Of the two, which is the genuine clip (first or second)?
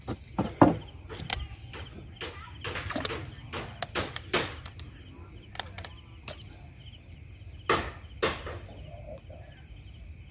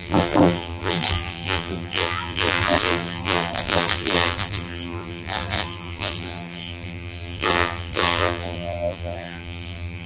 first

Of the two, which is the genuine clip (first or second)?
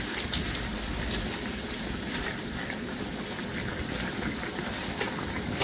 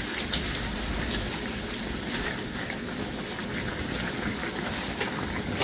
second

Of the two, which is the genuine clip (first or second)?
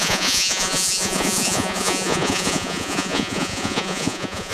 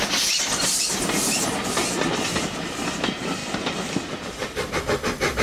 second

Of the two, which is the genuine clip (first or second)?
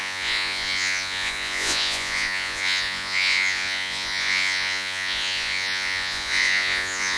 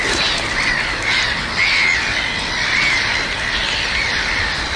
second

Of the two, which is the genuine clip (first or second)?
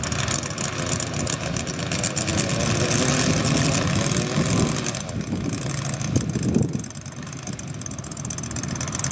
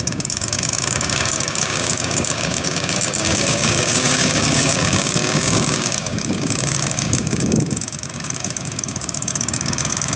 first